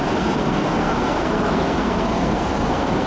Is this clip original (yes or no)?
no